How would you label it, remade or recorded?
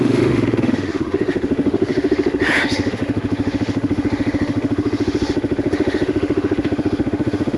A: remade